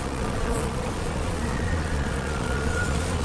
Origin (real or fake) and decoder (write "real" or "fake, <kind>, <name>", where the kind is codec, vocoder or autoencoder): fake, vocoder, Vocos